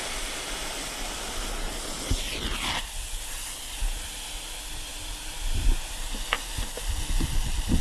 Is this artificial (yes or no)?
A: no